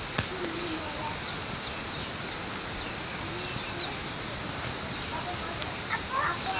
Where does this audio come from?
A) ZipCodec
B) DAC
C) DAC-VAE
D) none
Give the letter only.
D